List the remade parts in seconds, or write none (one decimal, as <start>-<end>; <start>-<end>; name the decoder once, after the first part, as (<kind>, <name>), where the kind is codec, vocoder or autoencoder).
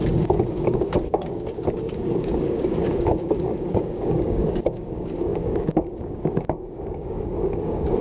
0.0-8.0 (codec, DAC)